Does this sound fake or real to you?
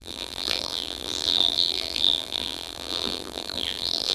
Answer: fake